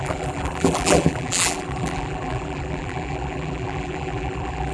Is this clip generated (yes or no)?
yes